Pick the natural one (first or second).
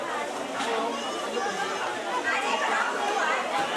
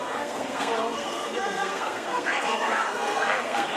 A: first